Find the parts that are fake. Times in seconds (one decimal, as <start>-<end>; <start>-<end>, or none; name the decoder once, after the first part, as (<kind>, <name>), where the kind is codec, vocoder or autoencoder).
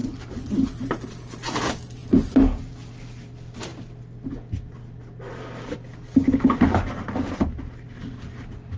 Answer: none